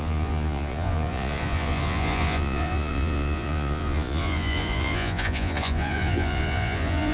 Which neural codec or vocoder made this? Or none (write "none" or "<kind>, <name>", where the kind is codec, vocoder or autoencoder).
vocoder, Vocos